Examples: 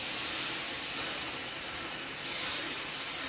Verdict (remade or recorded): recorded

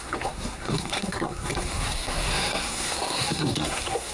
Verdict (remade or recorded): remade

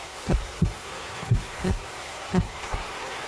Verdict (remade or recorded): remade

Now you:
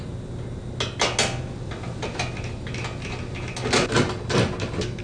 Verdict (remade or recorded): recorded